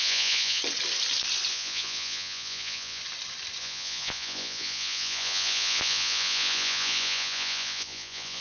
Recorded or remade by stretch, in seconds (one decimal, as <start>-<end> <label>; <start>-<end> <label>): 0.0-0.6 remade; 0.6-1.5 recorded; 1.5-3.0 remade; 3.0-3.6 recorded; 3.6-8.4 remade